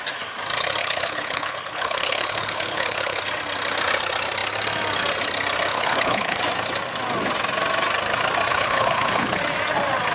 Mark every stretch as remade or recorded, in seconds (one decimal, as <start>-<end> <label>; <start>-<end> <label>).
0.0-0.8 recorded; 0.8-3.2 remade; 3.2-5.7 recorded; 5.7-6.4 remade; 6.4-8.5 recorded; 8.5-9.4 remade; 9.4-10.1 recorded